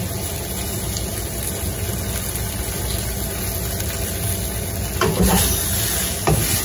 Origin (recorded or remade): recorded